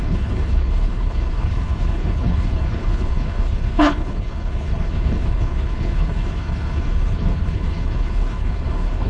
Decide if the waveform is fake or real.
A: fake